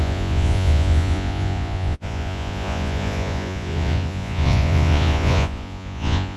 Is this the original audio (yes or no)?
no